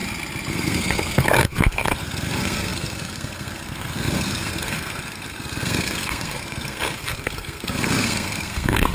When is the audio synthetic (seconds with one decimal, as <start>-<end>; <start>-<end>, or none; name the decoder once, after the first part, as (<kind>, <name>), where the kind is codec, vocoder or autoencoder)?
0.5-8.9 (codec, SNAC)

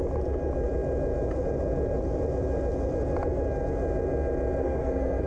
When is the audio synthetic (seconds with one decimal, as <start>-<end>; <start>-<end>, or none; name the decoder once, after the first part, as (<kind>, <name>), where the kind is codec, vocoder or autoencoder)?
4.6-5.3 (codec, SNAC)

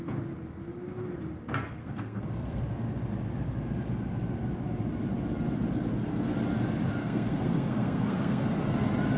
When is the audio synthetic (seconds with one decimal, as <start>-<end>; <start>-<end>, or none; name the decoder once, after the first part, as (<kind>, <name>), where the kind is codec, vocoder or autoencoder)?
1.8-2.6 (codec, SNAC); 7.0-8.5

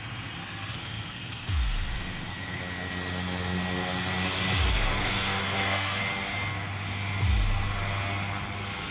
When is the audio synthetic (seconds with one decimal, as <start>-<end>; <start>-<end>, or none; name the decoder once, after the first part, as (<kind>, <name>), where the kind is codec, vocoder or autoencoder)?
0.4-2.6 (codec, SNAC); 4.7-6.0

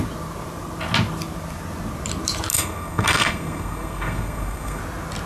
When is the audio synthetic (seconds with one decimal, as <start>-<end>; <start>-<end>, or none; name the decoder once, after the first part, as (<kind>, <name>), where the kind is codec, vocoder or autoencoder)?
2.5-4.8 (codec, SNAC)